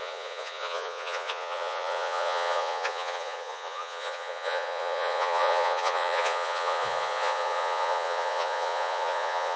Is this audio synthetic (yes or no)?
yes